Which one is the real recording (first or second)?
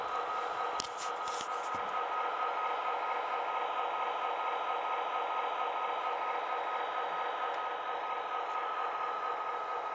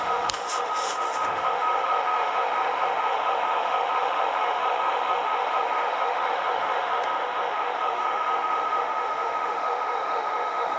first